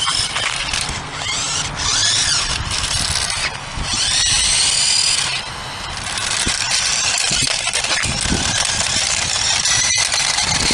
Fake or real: real